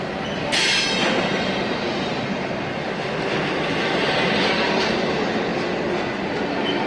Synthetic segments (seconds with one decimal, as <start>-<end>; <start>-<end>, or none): none